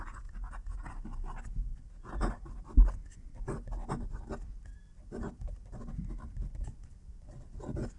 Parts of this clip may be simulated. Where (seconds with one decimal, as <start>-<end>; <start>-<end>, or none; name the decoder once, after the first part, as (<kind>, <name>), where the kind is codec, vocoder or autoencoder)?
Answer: 0.0-0.9 (vocoder, Vocos); 1.7-2.3